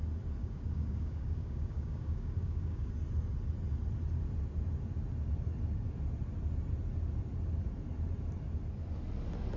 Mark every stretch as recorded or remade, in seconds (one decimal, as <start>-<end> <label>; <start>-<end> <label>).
0.0-0.4 recorded; 0.4-2.9 remade; 2.9-9.6 recorded